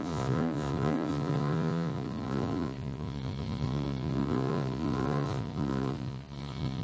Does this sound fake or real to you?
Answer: fake